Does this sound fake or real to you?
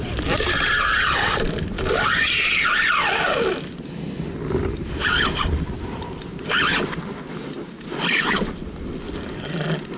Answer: real